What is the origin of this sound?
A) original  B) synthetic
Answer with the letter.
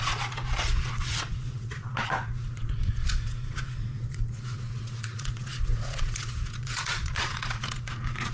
B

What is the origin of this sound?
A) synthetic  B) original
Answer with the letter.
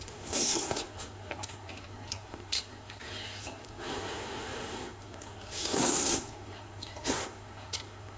A